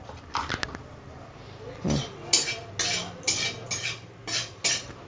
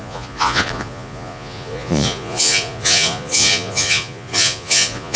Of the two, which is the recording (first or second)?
first